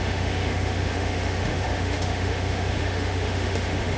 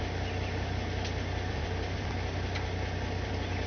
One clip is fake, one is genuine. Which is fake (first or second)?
first